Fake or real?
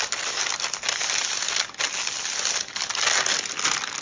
real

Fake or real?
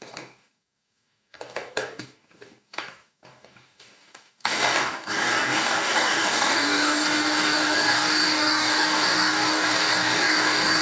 fake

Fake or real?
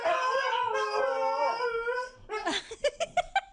real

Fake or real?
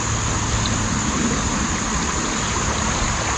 real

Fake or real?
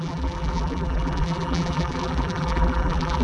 fake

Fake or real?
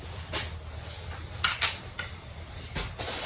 real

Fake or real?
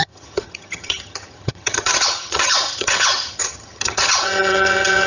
fake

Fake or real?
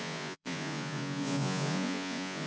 fake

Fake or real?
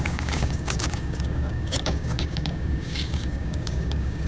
fake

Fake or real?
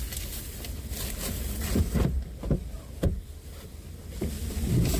real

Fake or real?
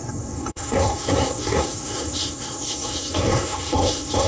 fake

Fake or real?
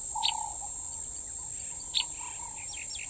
real